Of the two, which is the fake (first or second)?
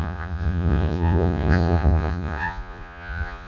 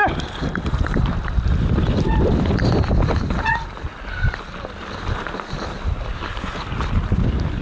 first